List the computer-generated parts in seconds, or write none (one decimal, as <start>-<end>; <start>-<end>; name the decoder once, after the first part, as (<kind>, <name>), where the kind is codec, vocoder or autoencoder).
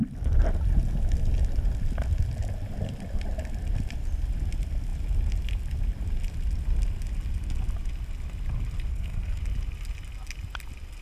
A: 8.9-9.4 (codec, SNAC)